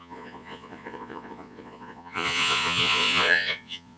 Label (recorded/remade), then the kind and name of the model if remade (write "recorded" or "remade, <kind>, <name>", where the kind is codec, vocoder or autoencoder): remade, vocoder, Vocos